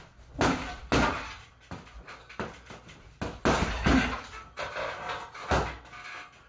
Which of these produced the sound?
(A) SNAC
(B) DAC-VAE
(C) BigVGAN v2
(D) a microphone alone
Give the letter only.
D